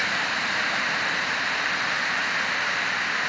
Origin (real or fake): real